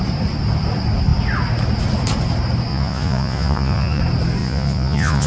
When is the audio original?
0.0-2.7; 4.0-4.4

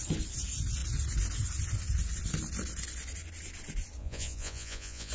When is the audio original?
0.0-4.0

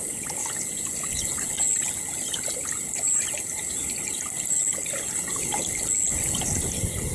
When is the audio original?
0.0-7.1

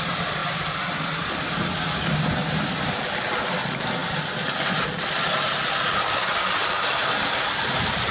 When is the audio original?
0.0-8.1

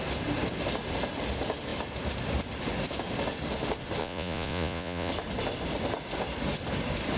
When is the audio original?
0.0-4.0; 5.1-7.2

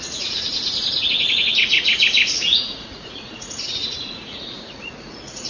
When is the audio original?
0.5-2.4